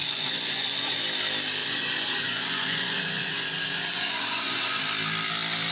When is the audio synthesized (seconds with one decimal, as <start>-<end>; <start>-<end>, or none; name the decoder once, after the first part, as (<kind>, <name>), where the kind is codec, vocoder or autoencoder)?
0.0-1.0 (vocoder, Vocos); 1.6-4.8